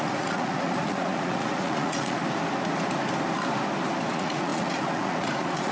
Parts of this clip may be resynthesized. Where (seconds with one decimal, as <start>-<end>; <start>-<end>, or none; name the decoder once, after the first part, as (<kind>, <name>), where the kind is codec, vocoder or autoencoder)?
0.0-2.2 (vocoder, Vocos); 4.1-5.7